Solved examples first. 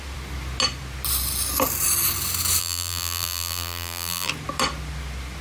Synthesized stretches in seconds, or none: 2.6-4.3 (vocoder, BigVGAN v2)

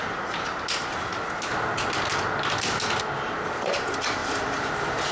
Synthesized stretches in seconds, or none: 0.0-1.1 (vocoder, BigVGAN v2); 3.3-5.1